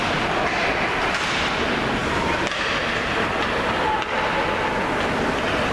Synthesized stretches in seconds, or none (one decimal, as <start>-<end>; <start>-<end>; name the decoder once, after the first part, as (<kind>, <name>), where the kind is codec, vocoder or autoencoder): none